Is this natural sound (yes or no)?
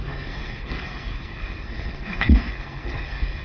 no